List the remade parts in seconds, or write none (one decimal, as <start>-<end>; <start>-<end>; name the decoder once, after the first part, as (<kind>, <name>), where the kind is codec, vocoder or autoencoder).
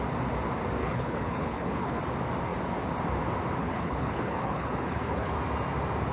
0.8-2.0 (codec, HILCodec); 3.6-5.3